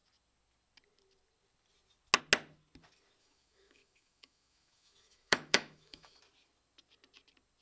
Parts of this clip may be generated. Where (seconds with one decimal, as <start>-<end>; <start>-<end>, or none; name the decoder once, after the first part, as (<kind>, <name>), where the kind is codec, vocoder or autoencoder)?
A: 3.2-6.2 (autoencoder, DAC-VAE)